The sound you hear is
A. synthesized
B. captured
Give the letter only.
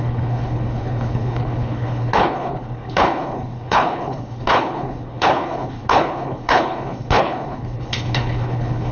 A